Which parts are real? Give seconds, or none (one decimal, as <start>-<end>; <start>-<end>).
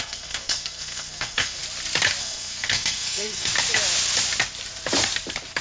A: 1.6-2.2; 3.5-5.6